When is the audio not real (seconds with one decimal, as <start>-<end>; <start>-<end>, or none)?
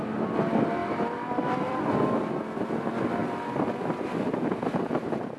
0.8-1.7